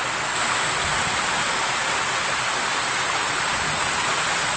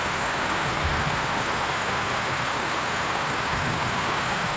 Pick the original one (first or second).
first